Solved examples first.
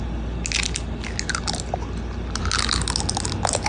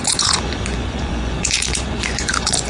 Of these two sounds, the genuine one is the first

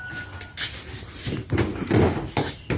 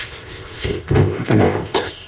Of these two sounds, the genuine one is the first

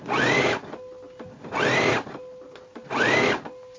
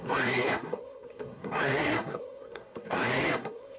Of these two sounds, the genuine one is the first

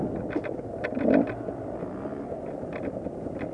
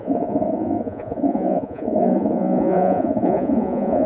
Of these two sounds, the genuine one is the first